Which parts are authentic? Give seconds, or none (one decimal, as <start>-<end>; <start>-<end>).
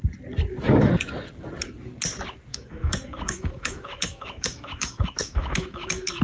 0.0-2.5